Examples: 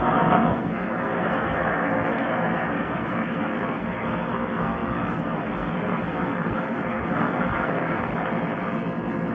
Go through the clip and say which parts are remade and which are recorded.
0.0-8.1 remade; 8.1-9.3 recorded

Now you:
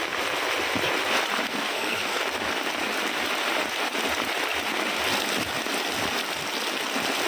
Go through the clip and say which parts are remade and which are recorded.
0.0-1.5 recorded; 1.5-2.2 remade; 2.2-7.3 recorded